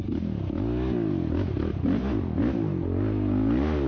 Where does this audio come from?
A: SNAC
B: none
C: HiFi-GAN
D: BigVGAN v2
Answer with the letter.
B